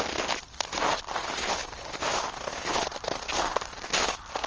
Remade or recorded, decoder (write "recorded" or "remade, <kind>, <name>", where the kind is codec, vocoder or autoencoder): recorded